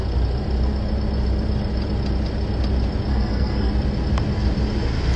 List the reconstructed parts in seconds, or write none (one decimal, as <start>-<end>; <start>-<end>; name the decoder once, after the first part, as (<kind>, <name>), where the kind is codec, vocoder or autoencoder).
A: 3.1-3.7 (codec, SNAC)